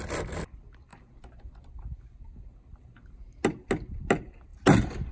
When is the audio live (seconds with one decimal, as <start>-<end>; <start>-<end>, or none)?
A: 0.0-5.1